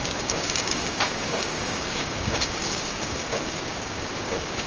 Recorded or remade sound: remade